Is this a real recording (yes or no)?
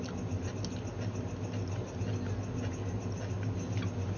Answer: yes